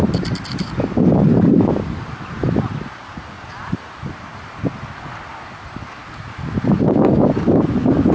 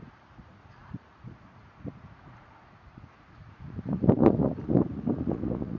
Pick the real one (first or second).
first